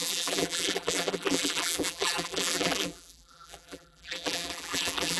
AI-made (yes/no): yes